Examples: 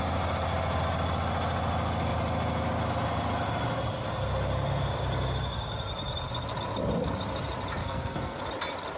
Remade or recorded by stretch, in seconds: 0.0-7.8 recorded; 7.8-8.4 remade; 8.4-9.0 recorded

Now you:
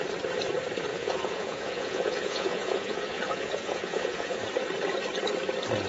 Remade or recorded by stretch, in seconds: 0.0-0.9 recorded; 0.9-4.4 remade; 4.4-5.9 recorded

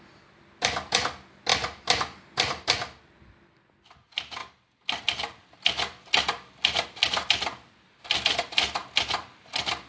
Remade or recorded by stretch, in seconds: 0.0-1.5 recorded; 1.5-3.1 remade; 3.1-4.4 recorded; 4.4-7.4 remade; 7.4-9.9 recorded

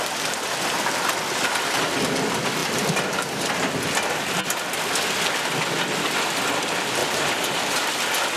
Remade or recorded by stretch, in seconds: 0.0-7.0 recorded; 7.0-7.9 remade; 7.9-8.4 recorded